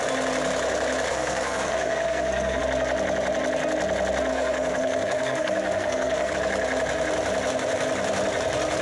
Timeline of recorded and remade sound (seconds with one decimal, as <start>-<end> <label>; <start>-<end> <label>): 0.0-1.1 recorded; 1.1-2.6 remade; 2.6-4.3 recorded; 4.3-6.3 remade; 6.3-8.8 recorded